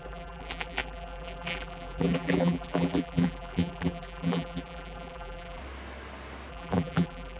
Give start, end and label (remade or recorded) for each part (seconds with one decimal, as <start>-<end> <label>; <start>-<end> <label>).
0.0-5.6 remade; 5.6-6.5 recorded; 6.5-7.4 remade